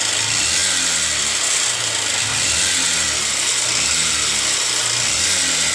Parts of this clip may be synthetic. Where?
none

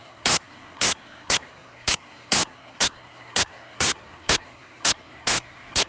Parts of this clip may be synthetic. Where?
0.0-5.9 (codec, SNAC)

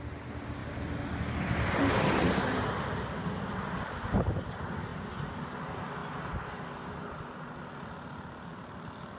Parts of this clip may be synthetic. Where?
none

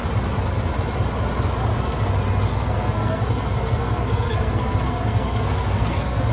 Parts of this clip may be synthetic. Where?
2.5-6.3 (codec, SNAC)

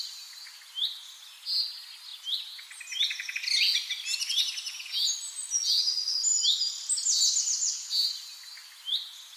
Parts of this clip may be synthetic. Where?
none

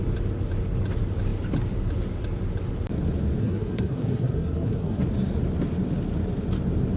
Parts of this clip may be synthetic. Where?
3.4-5.0 (codec, SNAC)